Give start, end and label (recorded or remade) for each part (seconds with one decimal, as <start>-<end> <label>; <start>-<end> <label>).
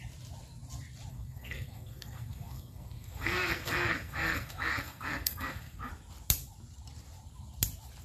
0.0-1.1 recorded; 1.1-5.9 remade; 5.9-8.0 recorded